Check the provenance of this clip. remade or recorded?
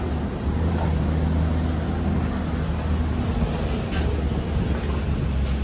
recorded